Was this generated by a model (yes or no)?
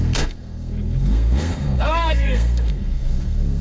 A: yes